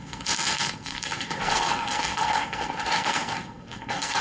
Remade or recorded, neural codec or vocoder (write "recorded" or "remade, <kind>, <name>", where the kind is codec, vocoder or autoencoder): remade, codec, SNAC